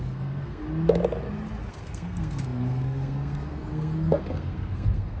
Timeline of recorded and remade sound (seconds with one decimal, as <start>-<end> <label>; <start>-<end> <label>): 0.0-0.6 remade; 0.6-1.7 recorded; 1.7-5.2 remade